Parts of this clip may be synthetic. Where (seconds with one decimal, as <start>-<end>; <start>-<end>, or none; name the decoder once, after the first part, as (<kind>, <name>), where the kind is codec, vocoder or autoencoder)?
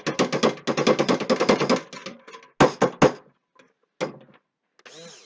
none